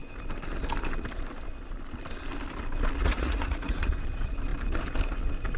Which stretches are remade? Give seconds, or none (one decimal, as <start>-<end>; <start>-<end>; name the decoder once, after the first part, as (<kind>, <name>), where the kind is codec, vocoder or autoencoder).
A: 3.0-3.9 (vocoder, Vocos)